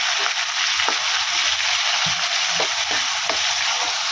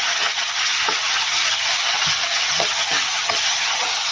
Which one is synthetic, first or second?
second